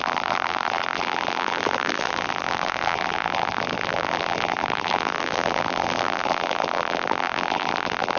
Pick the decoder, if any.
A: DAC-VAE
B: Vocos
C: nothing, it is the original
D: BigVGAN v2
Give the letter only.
D